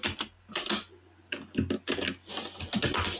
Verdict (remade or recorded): recorded